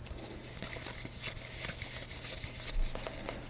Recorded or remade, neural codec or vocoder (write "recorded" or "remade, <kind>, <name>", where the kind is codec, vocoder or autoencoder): recorded